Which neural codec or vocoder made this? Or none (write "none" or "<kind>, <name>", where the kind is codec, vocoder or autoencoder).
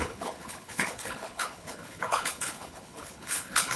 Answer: codec, HILCodec